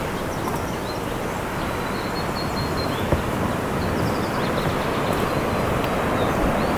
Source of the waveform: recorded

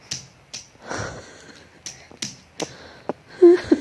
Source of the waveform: recorded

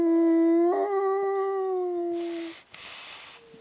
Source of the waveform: recorded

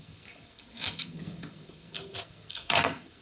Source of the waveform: remade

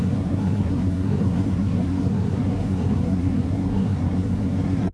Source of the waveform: remade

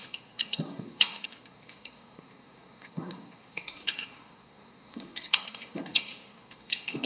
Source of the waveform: remade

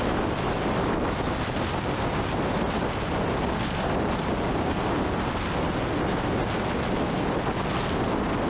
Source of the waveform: recorded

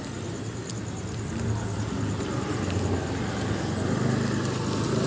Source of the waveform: recorded